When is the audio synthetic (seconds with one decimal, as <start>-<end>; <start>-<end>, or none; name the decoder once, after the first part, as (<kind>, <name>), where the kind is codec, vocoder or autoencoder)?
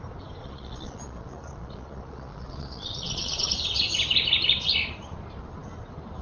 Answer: 0.4-3.5 (vocoder, Vocos)